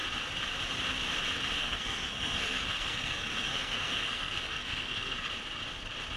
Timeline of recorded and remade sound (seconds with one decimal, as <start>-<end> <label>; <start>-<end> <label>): 0.0-1.6 recorded; 1.6-5.3 remade; 5.3-6.2 recorded